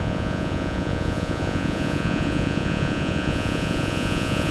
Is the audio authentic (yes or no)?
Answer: no